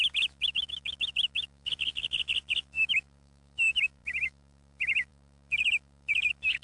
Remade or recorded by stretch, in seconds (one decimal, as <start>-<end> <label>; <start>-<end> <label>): 0.0-6.6 remade